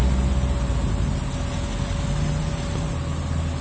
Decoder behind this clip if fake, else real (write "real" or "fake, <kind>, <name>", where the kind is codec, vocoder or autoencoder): real